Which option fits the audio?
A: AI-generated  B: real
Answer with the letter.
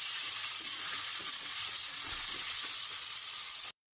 A